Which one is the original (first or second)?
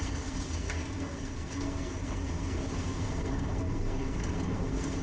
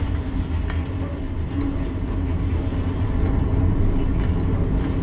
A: second